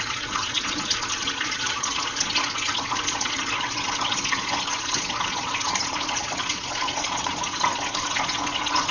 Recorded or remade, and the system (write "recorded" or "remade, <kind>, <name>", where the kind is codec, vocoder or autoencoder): remade, vocoder, Vocos